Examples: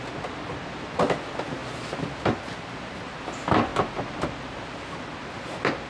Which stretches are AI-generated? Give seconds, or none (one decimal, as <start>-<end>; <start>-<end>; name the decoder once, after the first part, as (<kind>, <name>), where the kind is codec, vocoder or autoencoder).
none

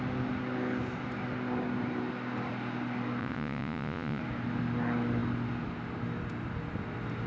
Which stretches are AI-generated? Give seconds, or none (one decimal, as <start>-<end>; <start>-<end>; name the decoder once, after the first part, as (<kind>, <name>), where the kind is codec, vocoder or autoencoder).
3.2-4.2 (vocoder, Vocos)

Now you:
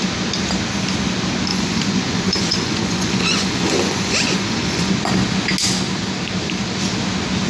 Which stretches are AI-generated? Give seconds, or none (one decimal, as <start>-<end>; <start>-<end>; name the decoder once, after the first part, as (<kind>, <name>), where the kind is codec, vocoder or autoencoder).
1.5-4.9 (vocoder, Vocos)

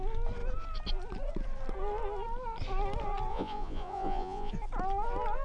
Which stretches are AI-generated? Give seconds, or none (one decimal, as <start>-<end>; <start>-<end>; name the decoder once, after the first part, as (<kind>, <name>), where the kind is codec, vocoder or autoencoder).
3.3-4.5 (vocoder, Vocos)

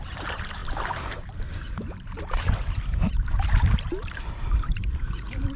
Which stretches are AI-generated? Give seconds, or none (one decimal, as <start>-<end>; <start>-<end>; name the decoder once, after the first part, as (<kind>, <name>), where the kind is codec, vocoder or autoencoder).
0.0-5.6 (vocoder, BigVGAN v2)

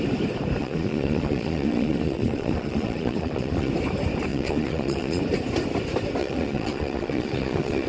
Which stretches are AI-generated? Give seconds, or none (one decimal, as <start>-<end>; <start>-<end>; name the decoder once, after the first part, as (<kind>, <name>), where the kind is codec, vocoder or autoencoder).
0.6-3.7 (vocoder, Vocos); 4.3-5.2; 6.2-7.9

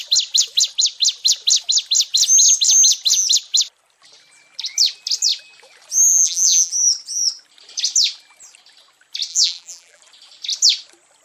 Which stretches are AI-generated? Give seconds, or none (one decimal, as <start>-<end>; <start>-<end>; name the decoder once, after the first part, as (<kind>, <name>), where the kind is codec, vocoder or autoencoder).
6.1-6.7 (vocoder, BigVGAN v2); 9.3-10.0